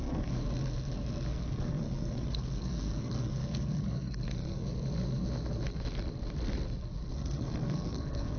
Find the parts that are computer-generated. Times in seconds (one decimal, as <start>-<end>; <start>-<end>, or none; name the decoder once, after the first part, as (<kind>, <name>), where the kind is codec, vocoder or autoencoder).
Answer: 0.0-0.4 (codec, SNAC); 1.3-4.6; 7.1-8.4